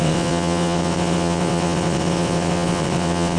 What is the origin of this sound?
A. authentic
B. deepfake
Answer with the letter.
B